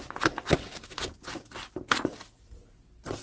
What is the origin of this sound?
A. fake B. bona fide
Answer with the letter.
B